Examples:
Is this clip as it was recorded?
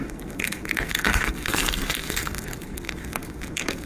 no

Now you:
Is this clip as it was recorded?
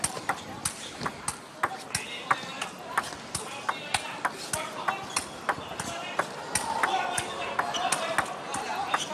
yes